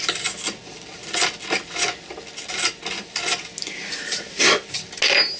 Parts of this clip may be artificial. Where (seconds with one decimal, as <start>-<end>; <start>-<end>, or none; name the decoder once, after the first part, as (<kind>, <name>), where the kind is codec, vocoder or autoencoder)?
none